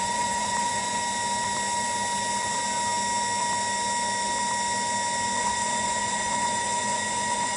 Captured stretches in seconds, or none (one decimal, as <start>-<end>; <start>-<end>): 1.0-5.4